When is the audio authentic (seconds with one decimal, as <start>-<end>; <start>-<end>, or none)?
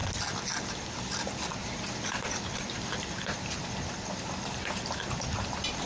0.0-1.6; 5.1-5.9